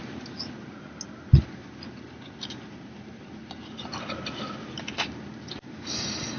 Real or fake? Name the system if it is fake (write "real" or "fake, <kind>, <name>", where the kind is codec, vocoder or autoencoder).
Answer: real